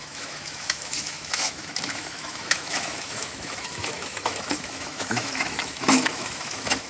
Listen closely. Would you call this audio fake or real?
fake